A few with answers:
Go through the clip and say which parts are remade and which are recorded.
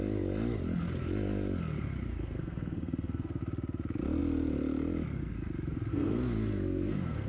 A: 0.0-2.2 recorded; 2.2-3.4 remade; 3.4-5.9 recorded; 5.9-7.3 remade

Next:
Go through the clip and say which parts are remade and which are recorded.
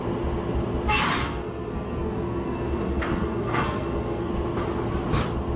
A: 0.0-1.2 recorded; 1.2-4.3 remade; 4.3-5.6 recorded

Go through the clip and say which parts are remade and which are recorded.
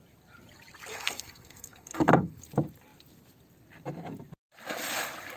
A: 0.0-0.9 recorded; 0.9-2.4 remade; 2.4-5.4 recorded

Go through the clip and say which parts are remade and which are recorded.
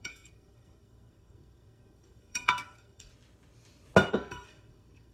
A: 0.0-3.1 remade; 3.1-4.1 recorded; 4.1-5.1 remade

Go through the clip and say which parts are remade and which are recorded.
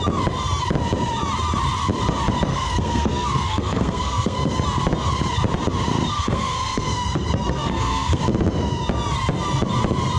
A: 0.0-2.5 recorded; 2.5-4.5 remade; 4.5-6.1 recorded; 6.1-8.2 remade; 8.2-10.2 recorded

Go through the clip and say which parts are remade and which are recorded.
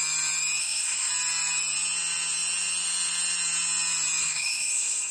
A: 0.0-0.6 recorded; 0.6-1.1 remade; 1.1-4.2 recorded; 4.2-5.1 remade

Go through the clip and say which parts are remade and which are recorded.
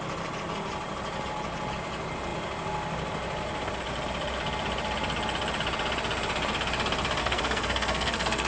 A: 0.0-7.2 recorded; 7.2-8.5 remade